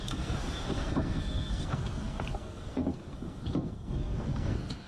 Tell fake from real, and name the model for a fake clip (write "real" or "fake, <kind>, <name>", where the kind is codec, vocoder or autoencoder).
fake, codec, SNAC